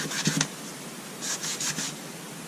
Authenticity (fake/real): real